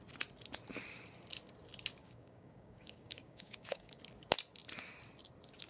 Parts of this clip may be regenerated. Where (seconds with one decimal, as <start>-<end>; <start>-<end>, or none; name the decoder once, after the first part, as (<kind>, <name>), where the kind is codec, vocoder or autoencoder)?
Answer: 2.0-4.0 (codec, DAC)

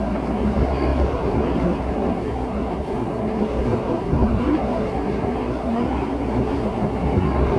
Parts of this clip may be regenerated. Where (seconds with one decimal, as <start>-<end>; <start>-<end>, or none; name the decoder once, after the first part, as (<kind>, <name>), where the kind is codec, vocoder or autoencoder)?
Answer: 0.0-7.6 (codec, SNAC)

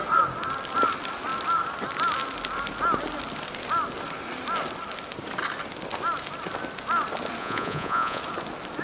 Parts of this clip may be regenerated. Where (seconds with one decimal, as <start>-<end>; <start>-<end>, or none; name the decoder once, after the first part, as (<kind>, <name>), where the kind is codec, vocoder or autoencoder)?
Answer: 7.4-8.2 (vocoder, Vocos)

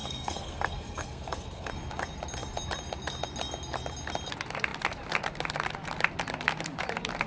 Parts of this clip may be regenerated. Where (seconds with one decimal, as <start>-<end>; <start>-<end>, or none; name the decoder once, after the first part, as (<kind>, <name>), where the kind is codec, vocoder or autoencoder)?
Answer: 0.0-1.7 (codec, SNAC)

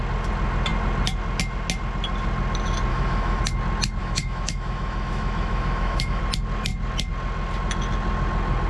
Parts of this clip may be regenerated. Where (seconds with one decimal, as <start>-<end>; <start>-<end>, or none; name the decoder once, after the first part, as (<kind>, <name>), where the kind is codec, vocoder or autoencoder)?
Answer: 2.9-3.4 (autoencoder, DAC-VAE); 4.0-6.2